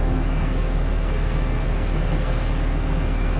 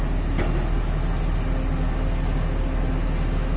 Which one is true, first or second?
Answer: second